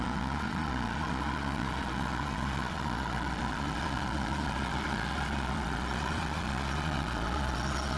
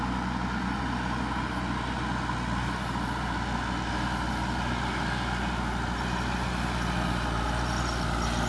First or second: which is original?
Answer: second